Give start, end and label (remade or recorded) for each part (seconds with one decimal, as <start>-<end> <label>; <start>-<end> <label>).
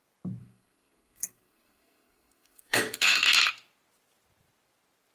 0.0-0.4 recorded; 0.4-3.5 remade; 3.5-5.1 recorded